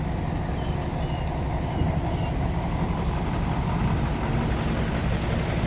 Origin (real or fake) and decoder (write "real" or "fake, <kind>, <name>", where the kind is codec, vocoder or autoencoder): real